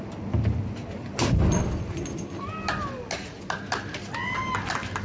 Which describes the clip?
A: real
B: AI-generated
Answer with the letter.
A